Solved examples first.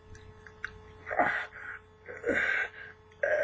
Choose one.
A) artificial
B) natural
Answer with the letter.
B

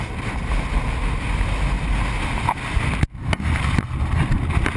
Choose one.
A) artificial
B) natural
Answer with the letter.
B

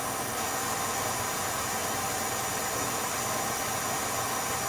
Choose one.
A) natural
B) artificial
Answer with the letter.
A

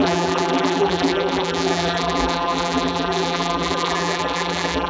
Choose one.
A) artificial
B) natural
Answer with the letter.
A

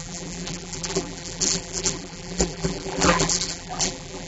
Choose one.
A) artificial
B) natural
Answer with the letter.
A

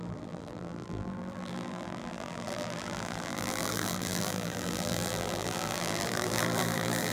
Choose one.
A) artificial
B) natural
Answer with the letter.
A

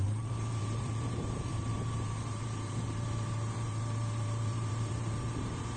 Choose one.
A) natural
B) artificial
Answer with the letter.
B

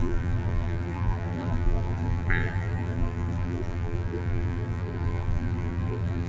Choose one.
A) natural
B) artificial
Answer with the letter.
B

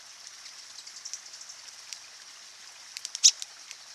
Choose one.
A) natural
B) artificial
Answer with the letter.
A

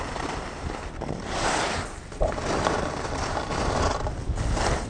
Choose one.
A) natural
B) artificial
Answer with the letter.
A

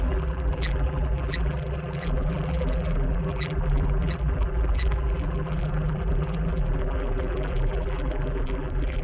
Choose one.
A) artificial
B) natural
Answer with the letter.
A